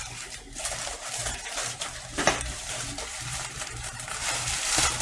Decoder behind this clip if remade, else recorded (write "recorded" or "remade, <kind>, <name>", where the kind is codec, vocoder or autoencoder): remade, vocoder, BigVGAN v2